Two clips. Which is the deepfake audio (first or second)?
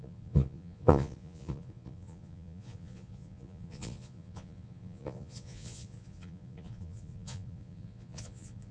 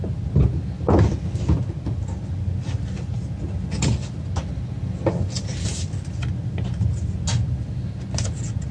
first